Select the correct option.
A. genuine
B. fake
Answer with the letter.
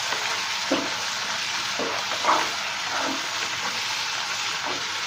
A